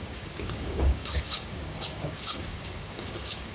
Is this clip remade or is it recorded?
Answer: remade